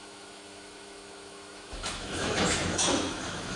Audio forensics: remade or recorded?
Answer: remade